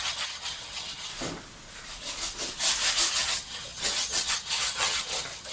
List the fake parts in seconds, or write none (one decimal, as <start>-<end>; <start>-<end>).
0.0-1.1; 3.1-5.5